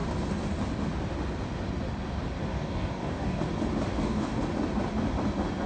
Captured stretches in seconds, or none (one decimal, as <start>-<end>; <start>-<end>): 0.0-2.5; 3.4-3.9; 4.4-5.7